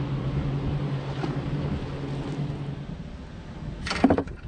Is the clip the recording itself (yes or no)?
yes